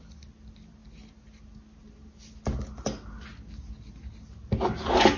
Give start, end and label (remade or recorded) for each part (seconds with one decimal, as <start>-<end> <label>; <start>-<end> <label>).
0.0-5.2 recorded